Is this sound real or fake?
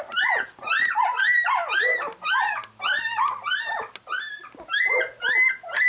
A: real